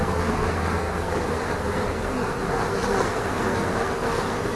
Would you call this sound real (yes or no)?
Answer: no